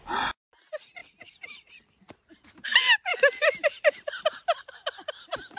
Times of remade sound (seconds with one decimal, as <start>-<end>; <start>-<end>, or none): none